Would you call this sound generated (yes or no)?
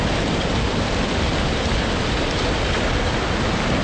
no